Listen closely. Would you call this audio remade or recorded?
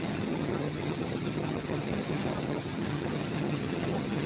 remade